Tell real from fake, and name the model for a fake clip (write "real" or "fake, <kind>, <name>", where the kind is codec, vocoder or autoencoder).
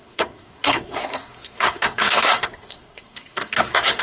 fake, codec, SNAC